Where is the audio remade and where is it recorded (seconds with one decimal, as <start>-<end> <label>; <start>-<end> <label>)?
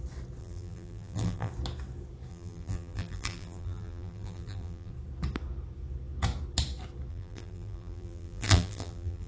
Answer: 0.0-0.4 recorded; 0.4-1.5 remade; 1.5-2.3 recorded; 2.3-4.9 remade; 4.9-7.1 recorded; 7.1-9.3 remade